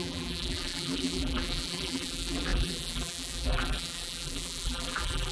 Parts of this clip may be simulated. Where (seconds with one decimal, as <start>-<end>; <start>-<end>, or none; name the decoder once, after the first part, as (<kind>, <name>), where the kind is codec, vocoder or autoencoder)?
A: 0.0-5.3 (vocoder, BigVGAN v2)